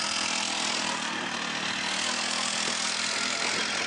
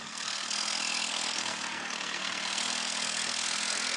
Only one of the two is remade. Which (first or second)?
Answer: second